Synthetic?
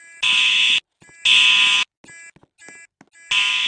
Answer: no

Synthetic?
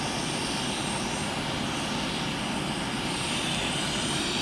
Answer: no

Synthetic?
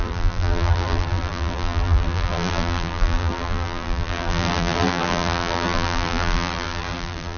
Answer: yes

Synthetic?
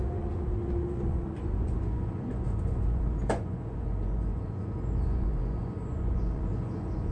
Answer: yes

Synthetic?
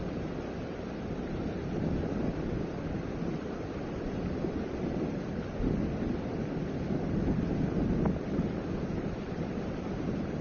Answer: yes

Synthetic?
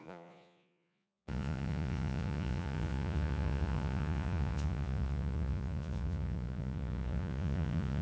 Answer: yes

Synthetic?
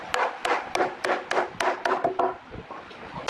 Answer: no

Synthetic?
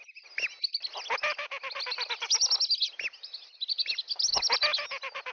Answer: no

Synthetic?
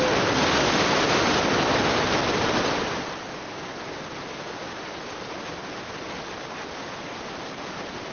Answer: no